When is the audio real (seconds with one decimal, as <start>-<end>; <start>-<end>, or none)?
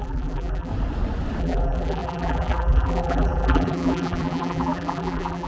0.7-1.4